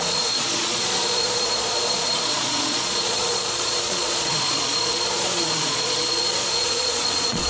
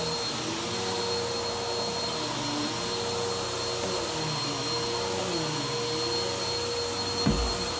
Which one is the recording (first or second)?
second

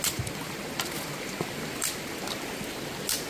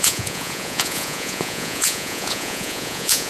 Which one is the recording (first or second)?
first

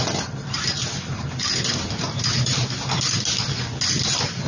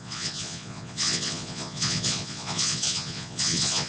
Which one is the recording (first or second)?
first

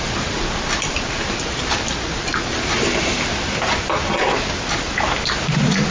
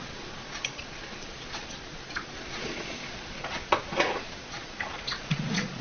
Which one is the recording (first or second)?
first